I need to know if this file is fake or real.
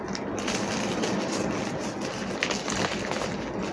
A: real